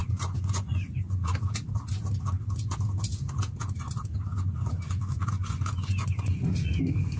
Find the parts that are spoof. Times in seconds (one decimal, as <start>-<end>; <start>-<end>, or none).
0.0-1.3; 4.3-6.8